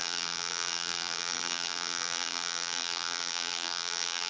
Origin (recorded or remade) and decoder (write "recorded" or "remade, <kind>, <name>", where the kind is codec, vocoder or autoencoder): remade, vocoder, BigVGAN v2